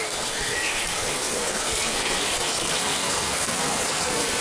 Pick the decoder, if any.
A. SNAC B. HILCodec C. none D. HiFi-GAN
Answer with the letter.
A